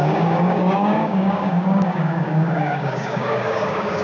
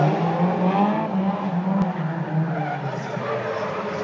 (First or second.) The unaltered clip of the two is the second